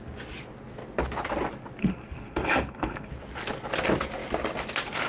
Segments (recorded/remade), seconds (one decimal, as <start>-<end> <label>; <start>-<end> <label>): 0.0-1.8 recorded; 1.8-3.1 remade; 3.1-5.1 recorded